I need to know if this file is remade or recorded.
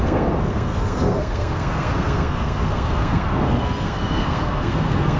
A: remade